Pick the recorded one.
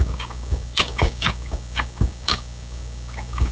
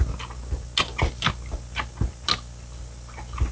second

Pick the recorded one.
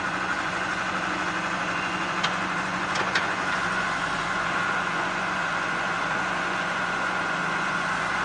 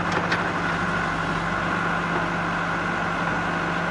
second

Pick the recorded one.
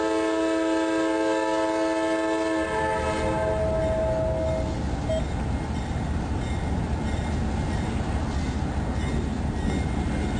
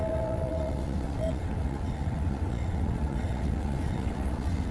first